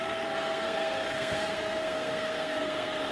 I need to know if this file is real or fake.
fake